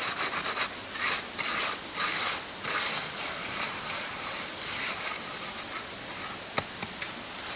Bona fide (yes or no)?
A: yes